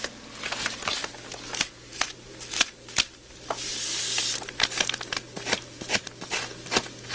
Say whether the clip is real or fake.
real